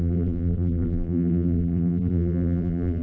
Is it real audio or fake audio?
fake